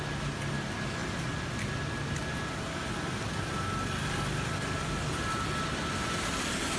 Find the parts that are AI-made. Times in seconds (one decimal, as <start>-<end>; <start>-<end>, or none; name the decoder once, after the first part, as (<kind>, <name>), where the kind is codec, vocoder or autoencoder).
none